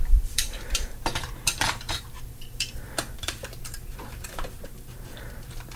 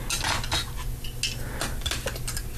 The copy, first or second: first